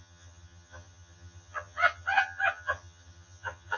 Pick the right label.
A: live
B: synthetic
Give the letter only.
B